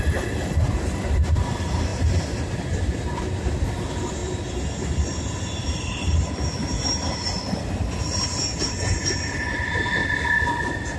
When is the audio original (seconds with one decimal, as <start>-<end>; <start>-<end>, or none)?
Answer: 1.9-3.2; 8.4-9.0; 10.0-10.6